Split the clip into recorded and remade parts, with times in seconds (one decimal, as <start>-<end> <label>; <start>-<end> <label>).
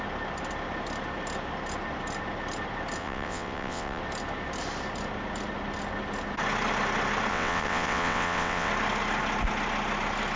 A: 0.0-3.0 recorded; 3.0-4.0 remade; 4.0-7.3 recorded; 7.3-8.7 remade; 8.7-10.4 recorded